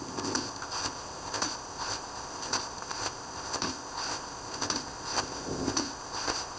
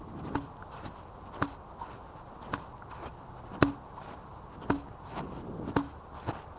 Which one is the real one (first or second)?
second